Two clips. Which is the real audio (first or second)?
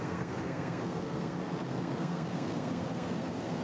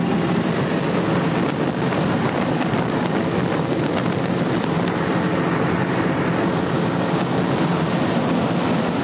second